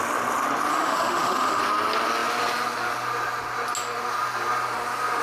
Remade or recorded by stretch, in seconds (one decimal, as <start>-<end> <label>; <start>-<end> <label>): 0.0-0.7 recorded; 0.7-1.6 remade; 1.6-5.2 recorded